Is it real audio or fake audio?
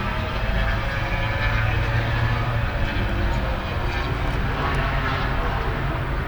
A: real